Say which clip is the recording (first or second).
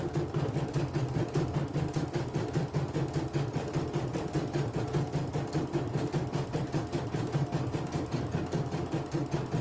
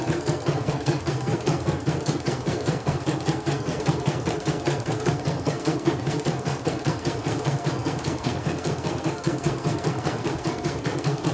first